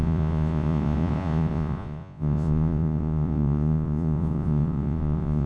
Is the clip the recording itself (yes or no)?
no